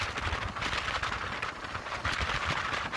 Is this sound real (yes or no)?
yes